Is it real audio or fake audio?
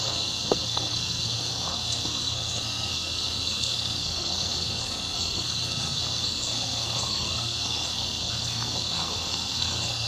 fake